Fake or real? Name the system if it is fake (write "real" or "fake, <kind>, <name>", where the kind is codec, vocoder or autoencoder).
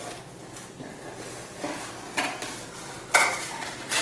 real